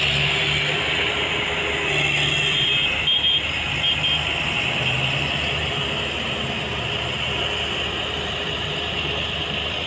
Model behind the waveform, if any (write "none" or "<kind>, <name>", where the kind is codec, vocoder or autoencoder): none